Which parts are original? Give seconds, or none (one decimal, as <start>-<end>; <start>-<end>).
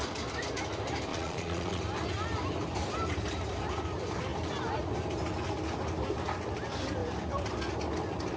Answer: 0.0-1.1; 1.8-8.4